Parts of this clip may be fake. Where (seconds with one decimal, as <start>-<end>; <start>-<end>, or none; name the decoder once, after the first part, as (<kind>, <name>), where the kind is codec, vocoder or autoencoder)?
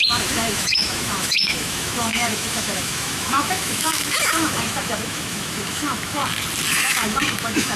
0.0-6.2 (autoencoder, DAC-VAE); 6.7-7.8